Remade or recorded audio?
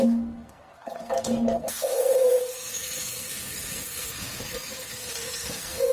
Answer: remade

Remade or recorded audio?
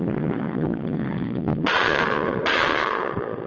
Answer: remade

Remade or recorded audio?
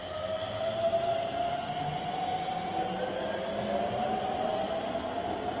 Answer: recorded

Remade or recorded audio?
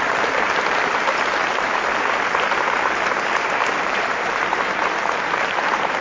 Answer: remade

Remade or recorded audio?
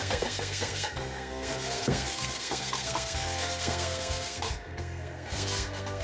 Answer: remade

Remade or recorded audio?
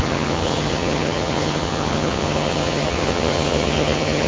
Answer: remade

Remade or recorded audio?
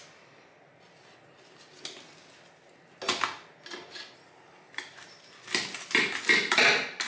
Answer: recorded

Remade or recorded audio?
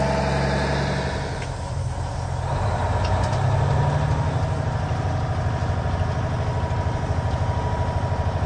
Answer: recorded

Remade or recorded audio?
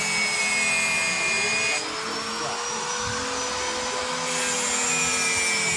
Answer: recorded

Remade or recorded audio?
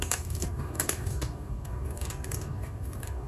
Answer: remade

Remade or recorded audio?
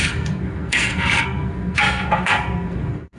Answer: remade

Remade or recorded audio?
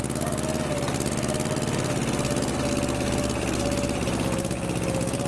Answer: recorded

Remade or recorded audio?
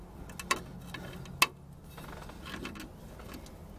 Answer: recorded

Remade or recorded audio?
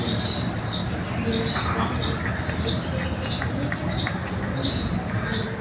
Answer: recorded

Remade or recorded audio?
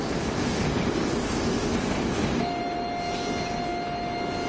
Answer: recorded